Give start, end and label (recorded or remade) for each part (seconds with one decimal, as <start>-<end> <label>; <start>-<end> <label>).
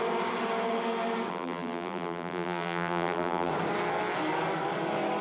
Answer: 0.0-1.3 recorded; 1.3-3.5 remade; 3.5-5.2 recorded